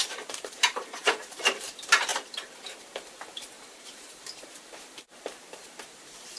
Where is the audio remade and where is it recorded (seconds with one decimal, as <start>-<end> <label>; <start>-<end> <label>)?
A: 0.0-6.4 remade